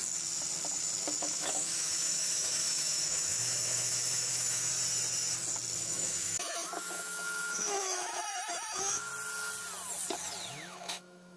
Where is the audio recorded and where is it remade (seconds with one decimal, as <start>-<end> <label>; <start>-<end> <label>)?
0.0-1.2 recorded; 1.2-4.7 remade; 4.7-5.8 recorded; 5.8-9.1 remade; 9.1-10.5 recorded; 10.5-11.4 remade